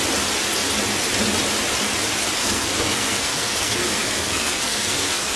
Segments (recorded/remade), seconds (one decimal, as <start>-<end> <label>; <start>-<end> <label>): 0.0-2.4 recorded; 2.4-5.4 remade